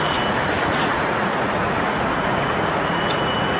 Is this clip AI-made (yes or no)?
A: yes